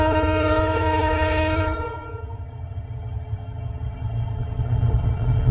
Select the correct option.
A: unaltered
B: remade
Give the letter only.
B